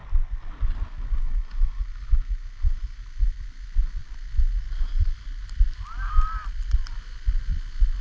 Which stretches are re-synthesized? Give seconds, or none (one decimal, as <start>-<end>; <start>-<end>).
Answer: none